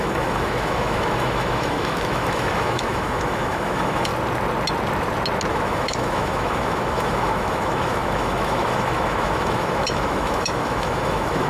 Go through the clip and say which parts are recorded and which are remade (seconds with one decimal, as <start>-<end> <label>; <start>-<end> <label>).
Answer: 0.0-4.1 remade; 4.1-5.5 recorded; 5.5-11.5 remade